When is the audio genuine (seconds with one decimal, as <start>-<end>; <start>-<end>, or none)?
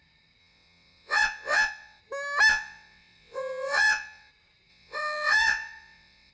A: 0.0-0.4; 2.0-2.5; 4.3-4.7